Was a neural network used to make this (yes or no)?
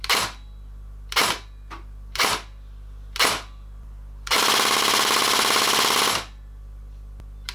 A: yes